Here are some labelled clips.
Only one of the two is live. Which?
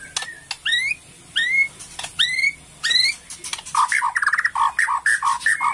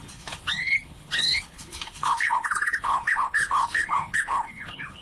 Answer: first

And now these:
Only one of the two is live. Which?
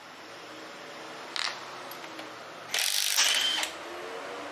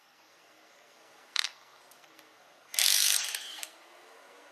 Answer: first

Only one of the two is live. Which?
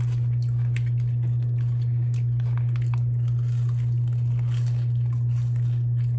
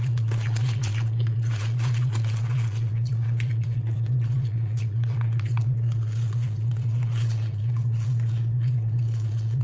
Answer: first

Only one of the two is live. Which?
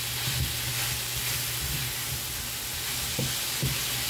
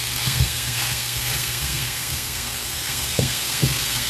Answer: first